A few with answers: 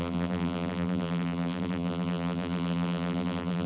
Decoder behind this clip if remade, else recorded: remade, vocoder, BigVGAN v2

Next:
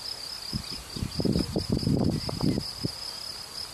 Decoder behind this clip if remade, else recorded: recorded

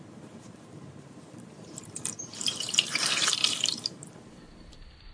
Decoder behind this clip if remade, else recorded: remade, vocoder, BigVGAN v2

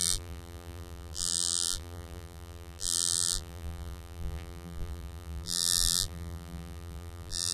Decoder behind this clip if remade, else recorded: remade, vocoder, BigVGAN v2